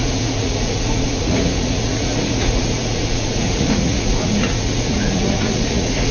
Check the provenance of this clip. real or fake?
fake